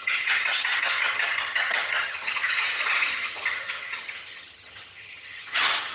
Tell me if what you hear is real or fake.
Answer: fake